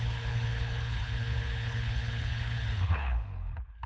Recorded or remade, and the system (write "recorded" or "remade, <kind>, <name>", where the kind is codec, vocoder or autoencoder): remade, codec, HILCodec